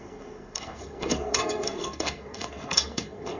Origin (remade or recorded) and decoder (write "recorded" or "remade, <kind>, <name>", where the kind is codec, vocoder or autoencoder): remade, codec, SNAC